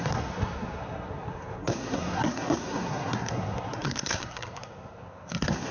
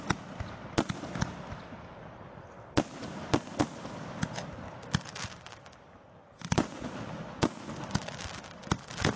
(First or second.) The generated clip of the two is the first